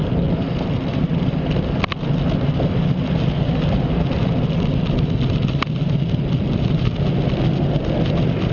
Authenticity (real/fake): real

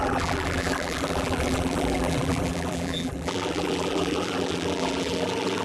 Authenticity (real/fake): fake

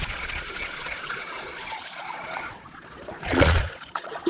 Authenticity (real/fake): fake